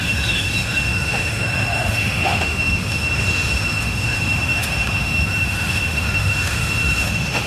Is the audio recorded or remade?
remade